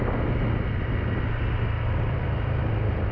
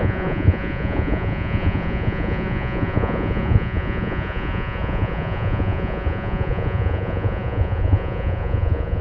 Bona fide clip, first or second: first